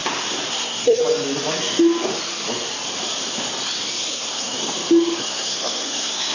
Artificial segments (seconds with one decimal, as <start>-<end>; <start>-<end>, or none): 0.5-1.0; 4.1-4.6; 5.2-6.3